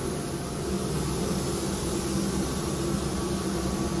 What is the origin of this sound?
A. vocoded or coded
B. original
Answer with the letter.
B